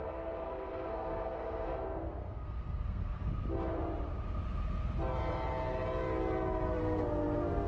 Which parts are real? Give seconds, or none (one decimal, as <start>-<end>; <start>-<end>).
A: 3.3-6.8